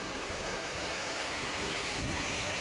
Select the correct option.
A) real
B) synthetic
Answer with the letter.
B